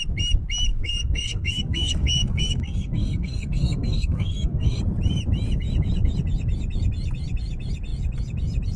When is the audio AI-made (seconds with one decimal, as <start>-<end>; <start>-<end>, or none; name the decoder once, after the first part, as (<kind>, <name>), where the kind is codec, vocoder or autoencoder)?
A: 0.7-4.8 (codec, SNAC)